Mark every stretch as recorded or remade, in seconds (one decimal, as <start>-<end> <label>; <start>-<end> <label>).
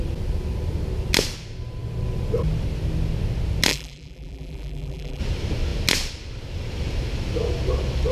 0.0-3.7 recorded; 3.7-5.2 remade; 5.2-8.1 recorded